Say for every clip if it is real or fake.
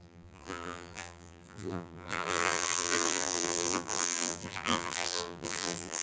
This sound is fake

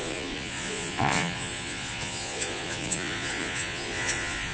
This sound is fake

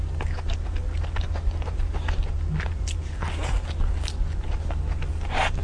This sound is real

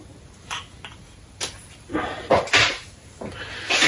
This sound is real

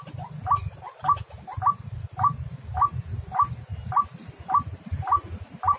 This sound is real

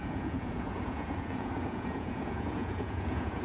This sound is fake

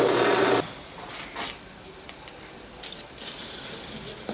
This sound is real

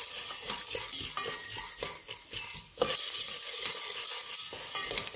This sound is real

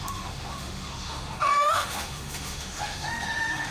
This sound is fake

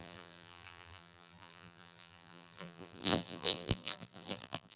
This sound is fake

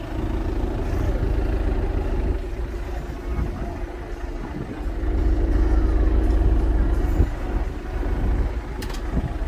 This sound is real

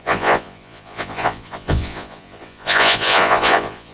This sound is fake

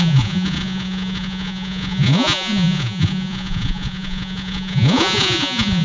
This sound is fake